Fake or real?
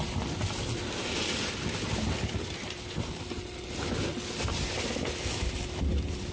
real